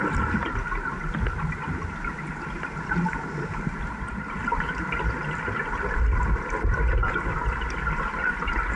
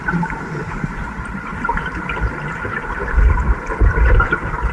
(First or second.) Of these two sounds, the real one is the first